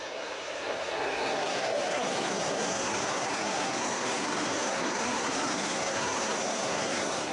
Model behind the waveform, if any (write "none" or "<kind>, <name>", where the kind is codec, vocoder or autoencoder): codec, SNAC